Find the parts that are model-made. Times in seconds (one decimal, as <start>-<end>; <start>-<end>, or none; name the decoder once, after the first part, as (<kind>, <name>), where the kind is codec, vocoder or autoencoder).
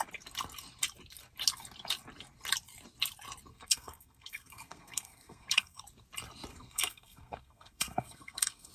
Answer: 3.5-5.8 (codec, SNAC); 6.5-8.7